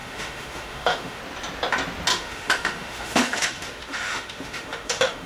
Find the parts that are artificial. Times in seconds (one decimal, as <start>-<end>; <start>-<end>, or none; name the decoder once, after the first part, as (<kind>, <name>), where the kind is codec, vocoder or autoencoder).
0.0-1.2 (autoencoder, DAC-VAE); 2.1-5.3